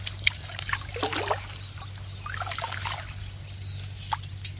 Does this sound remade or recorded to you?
recorded